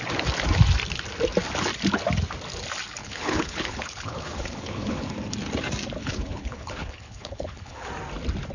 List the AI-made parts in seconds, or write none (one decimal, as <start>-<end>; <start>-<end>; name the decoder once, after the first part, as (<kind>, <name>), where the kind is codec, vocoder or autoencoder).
3.0-5.1 (codec, HILCodec); 6.0-7.9

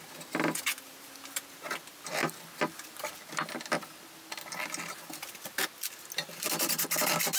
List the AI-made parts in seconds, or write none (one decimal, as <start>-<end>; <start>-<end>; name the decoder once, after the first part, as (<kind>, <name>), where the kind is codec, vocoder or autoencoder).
none

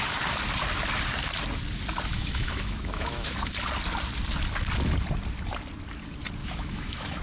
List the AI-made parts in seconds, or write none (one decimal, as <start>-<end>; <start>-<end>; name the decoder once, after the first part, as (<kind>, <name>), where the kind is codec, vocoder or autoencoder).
2.1-3.5 (autoencoder, DAC-VAE); 6.4-7.2